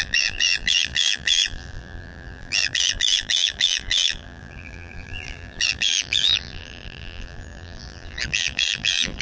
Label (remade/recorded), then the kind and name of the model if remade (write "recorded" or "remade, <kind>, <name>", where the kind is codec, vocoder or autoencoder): remade, vocoder, BigVGAN v2